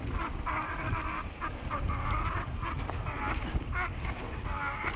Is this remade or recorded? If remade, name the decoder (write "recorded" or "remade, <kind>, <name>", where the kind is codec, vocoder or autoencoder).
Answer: recorded